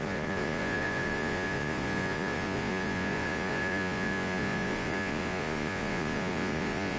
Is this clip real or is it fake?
fake